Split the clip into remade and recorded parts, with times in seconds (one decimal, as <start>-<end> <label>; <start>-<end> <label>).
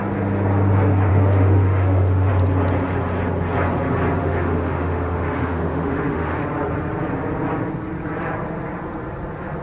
0.0-1.1 recorded; 1.1-2.3 remade; 2.3-4.2 recorded; 4.2-6.4 remade; 6.4-9.6 recorded